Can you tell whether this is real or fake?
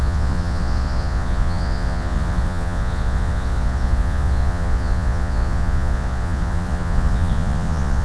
fake